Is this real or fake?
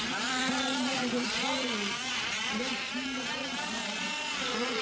fake